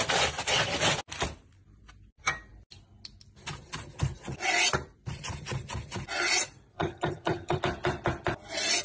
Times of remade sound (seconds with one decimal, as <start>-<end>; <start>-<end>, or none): 6.7-7.6